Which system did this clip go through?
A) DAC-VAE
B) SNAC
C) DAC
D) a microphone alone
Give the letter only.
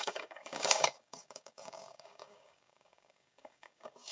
C